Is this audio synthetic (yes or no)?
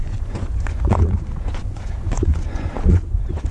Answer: yes